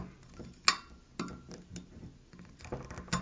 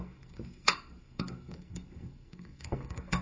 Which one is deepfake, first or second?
second